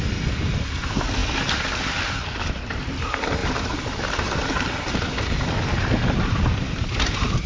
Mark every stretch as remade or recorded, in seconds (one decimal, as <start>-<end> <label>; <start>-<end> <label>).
0.0-3.4 recorded; 3.4-4.5 remade; 4.5-7.5 recorded